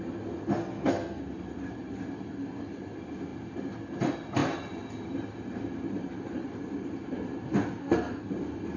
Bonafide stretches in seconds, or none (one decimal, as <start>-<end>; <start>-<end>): 0.0-0.6; 1.2-7.8; 8.3-8.8